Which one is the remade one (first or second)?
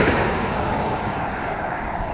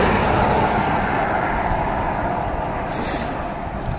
first